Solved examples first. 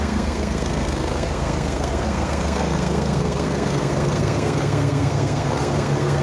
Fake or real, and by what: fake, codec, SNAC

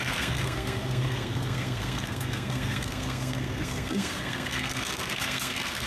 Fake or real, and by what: fake, codec, SNAC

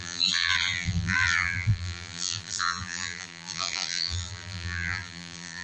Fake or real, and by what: fake, vocoder, BigVGAN v2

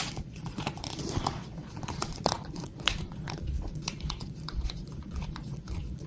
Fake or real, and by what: fake, vocoder, Vocos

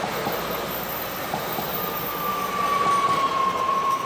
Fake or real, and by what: real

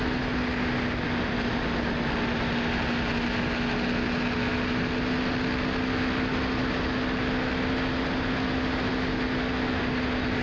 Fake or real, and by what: real